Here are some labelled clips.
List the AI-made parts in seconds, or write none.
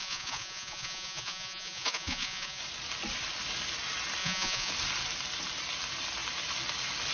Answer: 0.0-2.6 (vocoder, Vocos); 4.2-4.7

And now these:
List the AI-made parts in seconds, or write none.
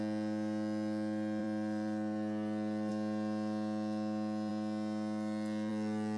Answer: 1.4-2.9 (vocoder, BigVGAN v2)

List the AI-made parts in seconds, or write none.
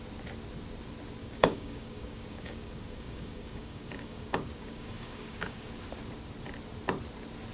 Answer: 1.2-5.7 (codec, DAC)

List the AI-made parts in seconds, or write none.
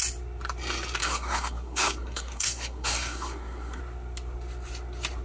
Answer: 1.0-3.8 (codec, SNAC)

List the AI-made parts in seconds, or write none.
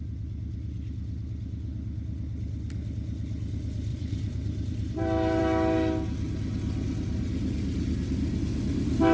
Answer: 3.9-5.4 (vocoder, BigVGAN v2)